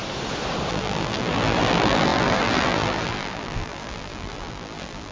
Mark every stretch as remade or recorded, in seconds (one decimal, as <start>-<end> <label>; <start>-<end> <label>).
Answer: 0.0-0.7 recorded; 0.7-5.1 remade